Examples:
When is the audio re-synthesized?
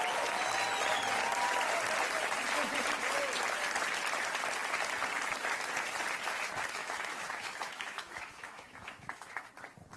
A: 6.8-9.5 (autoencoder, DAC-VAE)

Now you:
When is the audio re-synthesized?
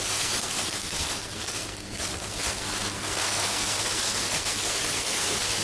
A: 0.0-5.6 (codec, SNAC)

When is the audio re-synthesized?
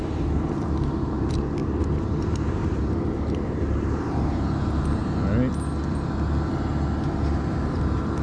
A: 0.0-1.6 (vocoder, BigVGAN v2); 2.2-5.0; 7.0-8.2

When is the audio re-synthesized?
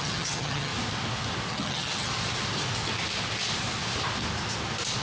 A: 0.0-0.7 (vocoder, HiFi-GAN); 1.5-2.1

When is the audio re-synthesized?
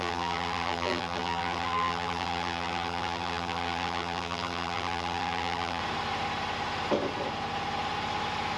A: 0.0-5.8 (vocoder, BigVGAN v2)